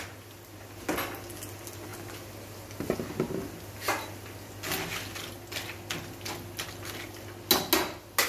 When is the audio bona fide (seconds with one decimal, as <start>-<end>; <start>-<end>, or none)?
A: 0.0-8.3